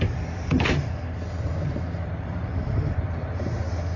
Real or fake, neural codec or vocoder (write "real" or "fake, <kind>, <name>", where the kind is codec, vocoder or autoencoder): fake, vocoder, BigVGAN v2